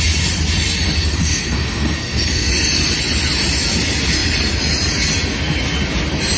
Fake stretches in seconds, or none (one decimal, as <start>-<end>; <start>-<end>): 1.2-2.5